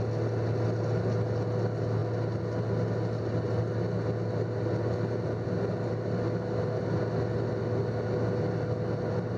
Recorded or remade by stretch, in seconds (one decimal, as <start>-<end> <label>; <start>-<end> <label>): 0.0-9.4 recorded